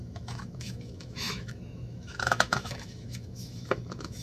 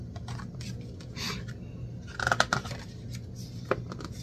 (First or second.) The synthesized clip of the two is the first